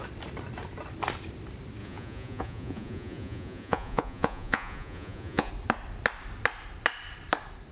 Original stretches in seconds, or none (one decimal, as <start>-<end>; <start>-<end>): 0.0-1.8; 5.5-7.7